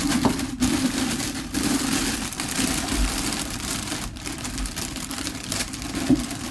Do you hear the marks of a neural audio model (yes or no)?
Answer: yes